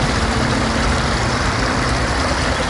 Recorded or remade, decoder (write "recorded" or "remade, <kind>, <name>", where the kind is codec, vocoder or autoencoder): recorded